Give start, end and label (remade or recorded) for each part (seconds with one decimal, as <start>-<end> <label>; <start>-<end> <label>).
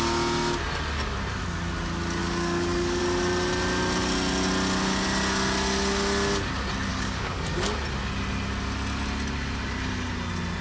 0.0-2.2 recorded; 2.2-3.0 remade; 3.0-6.9 recorded; 6.9-7.6 remade; 7.6-10.6 recorded